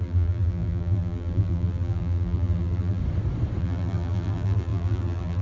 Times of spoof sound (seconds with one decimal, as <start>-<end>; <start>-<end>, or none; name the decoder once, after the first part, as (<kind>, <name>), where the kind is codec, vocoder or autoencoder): 0.0-3.0 (vocoder, BigVGAN v2); 3.6-5.4